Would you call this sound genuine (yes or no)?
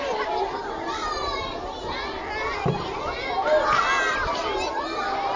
yes